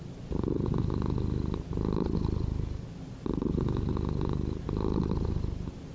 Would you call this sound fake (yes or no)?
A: no